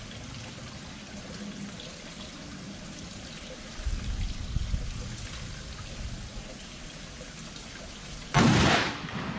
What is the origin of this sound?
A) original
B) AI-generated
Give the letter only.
A